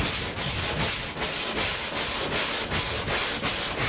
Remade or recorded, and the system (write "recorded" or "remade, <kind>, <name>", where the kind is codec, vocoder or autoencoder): recorded